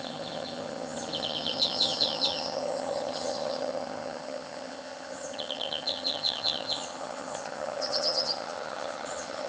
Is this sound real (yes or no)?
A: no